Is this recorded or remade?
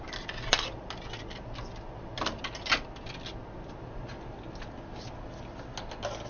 recorded